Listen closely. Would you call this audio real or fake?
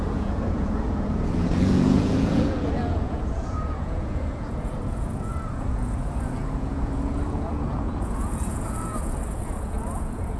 fake